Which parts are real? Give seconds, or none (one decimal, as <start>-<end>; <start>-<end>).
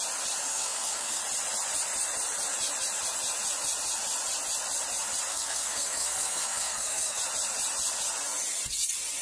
0.0-0.5; 1.2-5.3; 7.2-9.2